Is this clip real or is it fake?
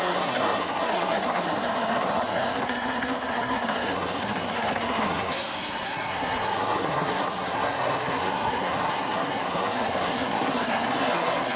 fake